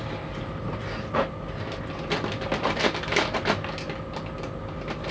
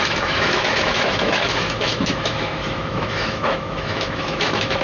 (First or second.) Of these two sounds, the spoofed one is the second